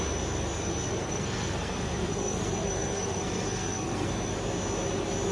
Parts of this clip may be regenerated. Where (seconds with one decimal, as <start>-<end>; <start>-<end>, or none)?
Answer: 0.9-4.1

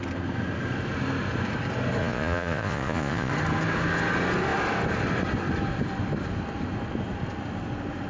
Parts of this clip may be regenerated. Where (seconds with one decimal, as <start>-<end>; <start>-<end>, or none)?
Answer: 2.0-3.3

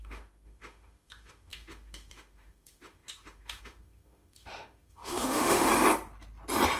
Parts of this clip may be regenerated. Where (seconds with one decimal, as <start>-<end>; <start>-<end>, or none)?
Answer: 0.0-5.7